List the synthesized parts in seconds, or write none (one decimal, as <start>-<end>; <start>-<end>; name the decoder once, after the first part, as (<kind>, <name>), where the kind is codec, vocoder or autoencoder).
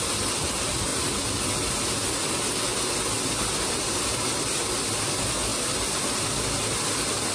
0.0-0.9 (vocoder, BigVGAN v2); 2.3-2.7; 3.7-5.5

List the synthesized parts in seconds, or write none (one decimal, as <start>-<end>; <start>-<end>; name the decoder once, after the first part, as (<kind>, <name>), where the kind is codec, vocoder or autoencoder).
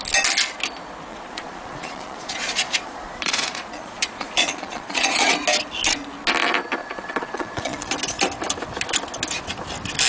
1.1-5.3 (vocoder, Vocos); 6.8-7.9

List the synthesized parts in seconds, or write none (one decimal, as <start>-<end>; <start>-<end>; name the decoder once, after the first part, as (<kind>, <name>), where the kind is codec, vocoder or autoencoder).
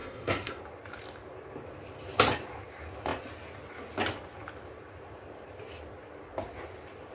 0.0-0.6 (codec, SNAC)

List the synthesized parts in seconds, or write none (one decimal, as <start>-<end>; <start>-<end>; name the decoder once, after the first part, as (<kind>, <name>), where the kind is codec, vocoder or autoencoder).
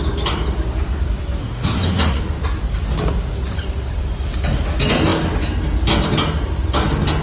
1.4-2.2 (codec, SNAC)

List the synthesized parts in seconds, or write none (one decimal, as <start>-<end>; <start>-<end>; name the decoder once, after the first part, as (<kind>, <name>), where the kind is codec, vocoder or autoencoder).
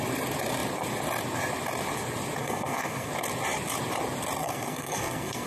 2.4-3.1 (codec, SNAC); 4.4-5.5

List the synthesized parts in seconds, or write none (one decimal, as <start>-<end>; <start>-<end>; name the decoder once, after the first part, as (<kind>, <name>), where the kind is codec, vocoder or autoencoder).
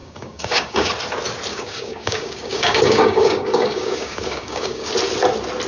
0.0-0.9 (codec, DAC); 1.5-4.9